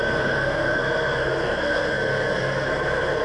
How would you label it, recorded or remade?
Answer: remade